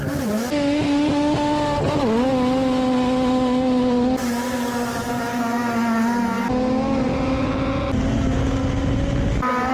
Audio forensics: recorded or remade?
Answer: recorded